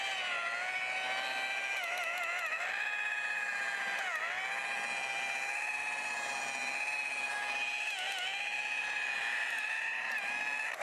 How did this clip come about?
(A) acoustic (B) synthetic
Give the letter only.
A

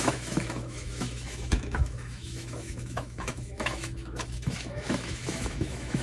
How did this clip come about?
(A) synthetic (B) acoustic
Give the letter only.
A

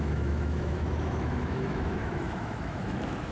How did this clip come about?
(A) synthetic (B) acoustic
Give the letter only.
A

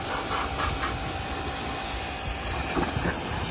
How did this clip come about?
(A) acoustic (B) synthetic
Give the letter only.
A